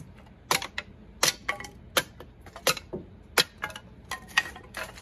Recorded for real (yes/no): yes